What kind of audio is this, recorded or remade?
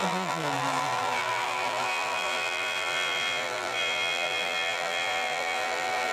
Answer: remade